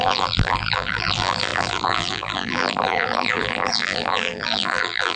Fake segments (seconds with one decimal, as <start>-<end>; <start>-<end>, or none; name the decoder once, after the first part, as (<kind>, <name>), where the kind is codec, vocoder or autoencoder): 0.0-5.2 (vocoder, BigVGAN v2)